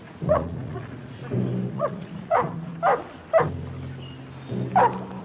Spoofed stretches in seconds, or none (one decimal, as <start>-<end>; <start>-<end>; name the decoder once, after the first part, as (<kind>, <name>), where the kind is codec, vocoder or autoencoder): 0.0-1.2 (vocoder, Vocos); 1.7-2.7